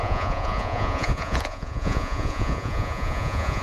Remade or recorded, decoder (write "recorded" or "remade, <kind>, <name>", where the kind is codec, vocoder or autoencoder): remade, vocoder, Vocos